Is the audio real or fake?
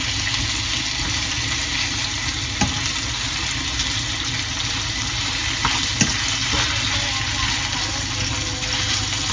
real